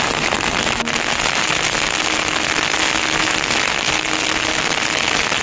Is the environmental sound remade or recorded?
recorded